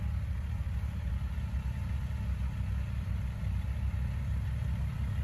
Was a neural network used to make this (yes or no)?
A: no